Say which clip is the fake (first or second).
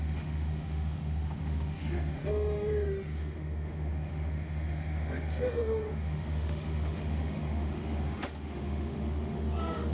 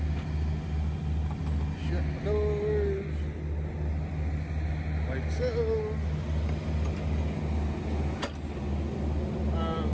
first